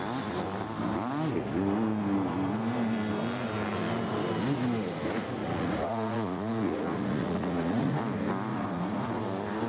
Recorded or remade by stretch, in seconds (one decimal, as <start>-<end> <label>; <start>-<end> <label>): 0.0-5.4 recorded; 5.4-8.0 remade; 8.0-8.5 recorded; 8.5-9.2 remade; 9.2-9.7 recorded